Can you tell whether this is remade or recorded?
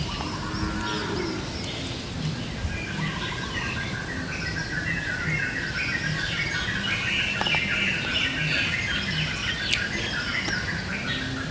recorded